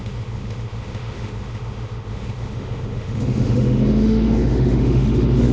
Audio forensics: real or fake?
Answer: fake